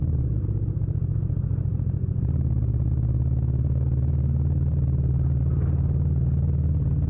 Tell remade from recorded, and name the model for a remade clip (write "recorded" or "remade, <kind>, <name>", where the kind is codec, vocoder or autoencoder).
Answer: recorded